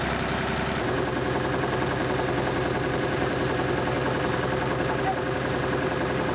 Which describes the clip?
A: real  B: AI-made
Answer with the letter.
B